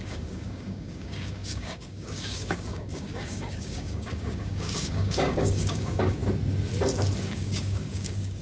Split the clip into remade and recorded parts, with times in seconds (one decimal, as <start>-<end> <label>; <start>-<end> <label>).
0.0-6.2 remade; 6.2-7.2 recorded; 7.2-8.4 remade